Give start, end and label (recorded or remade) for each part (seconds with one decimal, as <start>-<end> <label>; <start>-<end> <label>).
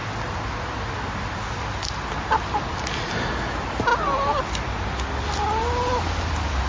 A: 0.0-6.7 recorded